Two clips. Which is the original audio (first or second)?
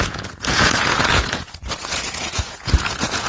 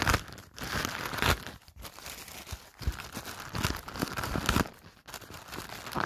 second